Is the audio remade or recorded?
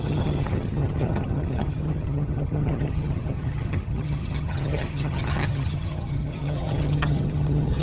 remade